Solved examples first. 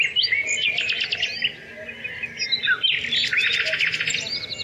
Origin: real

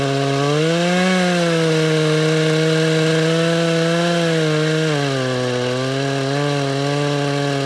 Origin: real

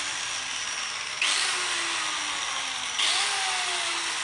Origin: real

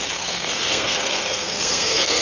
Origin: fake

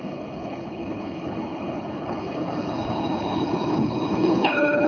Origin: fake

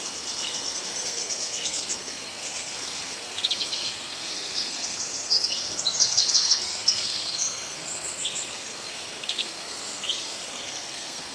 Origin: fake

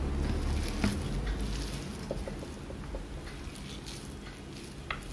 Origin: real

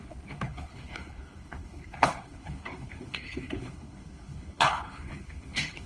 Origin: fake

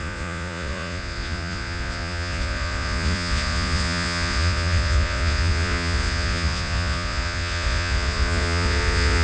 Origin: fake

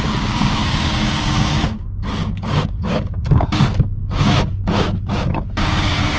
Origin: fake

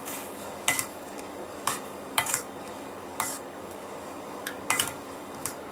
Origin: fake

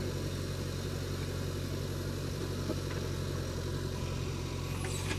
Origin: real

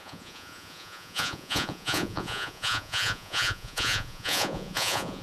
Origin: fake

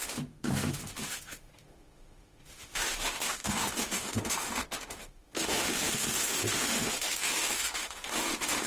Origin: fake